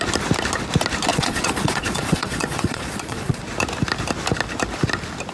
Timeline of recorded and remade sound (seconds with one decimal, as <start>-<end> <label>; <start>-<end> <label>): 0.0-1.1 recorded; 1.1-3.4 remade; 3.4-5.3 recorded